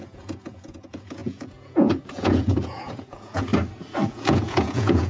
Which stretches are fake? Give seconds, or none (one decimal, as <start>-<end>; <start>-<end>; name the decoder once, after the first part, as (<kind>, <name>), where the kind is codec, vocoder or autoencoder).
0.0-3.5 (vocoder, Vocos); 4.1-5.1